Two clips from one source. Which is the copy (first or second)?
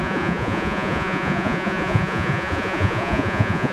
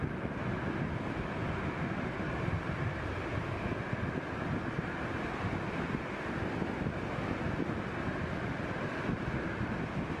first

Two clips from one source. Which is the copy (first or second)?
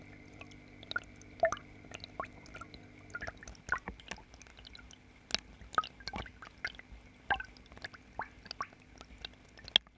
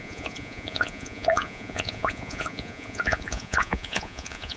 second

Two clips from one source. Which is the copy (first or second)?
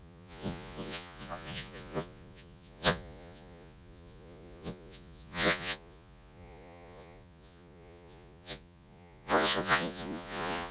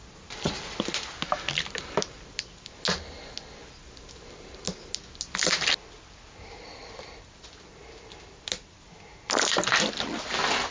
first